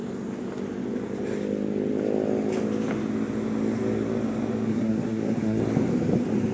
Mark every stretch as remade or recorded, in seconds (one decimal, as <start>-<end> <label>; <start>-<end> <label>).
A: 0.0-4.7 recorded; 4.7-5.6 remade; 5.6-6.5 recorded